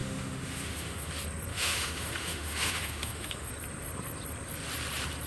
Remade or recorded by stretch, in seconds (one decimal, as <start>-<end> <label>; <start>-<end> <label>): 0.0-1.1 remade; 1.1-1.5 recorded; 1.5-3.5 remade; 3.5-5.3 recorded